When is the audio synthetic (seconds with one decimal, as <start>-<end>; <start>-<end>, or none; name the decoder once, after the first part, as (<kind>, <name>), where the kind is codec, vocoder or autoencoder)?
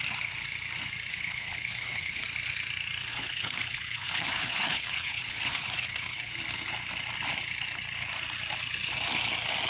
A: 1.1-2.2 (codec, HILCodec); 3.1-6.3